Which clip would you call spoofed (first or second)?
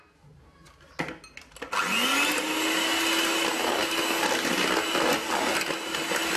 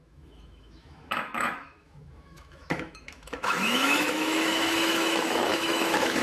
second